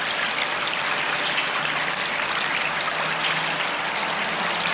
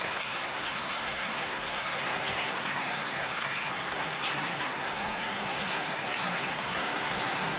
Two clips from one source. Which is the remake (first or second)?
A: second